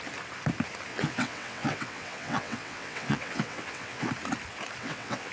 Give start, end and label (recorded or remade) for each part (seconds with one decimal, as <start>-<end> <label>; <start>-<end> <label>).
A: 0.0-0.9 recorded; 0.9-4.1 remade; 4.1-4.8 recorded; 4.8-5.3 remade